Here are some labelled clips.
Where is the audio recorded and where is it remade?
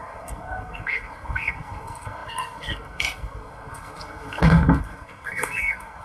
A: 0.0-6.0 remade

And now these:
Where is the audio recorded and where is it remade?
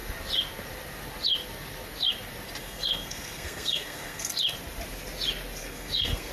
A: 0.0-2.6 recorded; 2.6-4.3 remade; 4.3-5.6 recorded; 5.6-6.3 remade